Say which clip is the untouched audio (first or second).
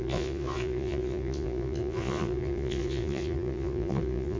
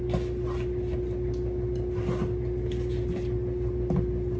second